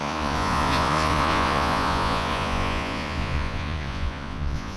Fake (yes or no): yes